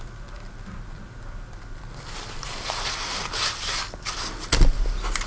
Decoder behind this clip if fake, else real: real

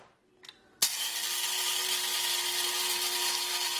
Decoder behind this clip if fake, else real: real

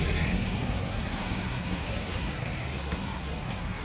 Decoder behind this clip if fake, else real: fake, codec, SNAC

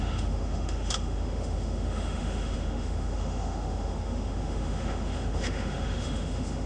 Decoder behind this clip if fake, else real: fake, autoencoder, DAC-VAE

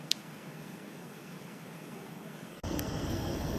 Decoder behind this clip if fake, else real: fake, codec, SNAC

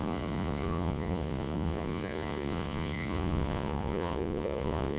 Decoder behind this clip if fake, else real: fake, vocoder, Vocos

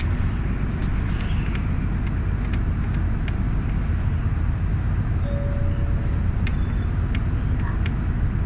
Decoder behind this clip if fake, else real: real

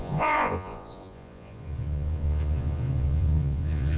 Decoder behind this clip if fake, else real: fake, vocoder, Vocos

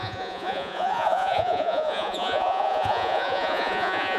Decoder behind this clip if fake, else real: fake, vocoder, Vocos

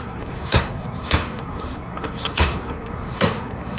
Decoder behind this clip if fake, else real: fake, codec, SNAC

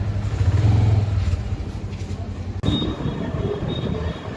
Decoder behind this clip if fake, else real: real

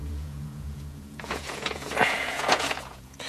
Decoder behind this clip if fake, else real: fake, vocoder, Vocos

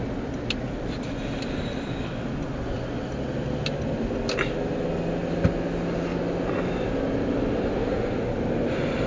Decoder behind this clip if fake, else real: real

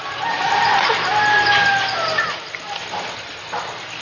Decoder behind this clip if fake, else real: real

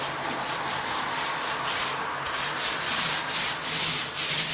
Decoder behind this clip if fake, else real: real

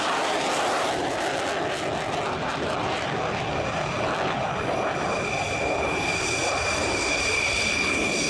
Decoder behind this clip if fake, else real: fake, vocoder, BigVGAN v2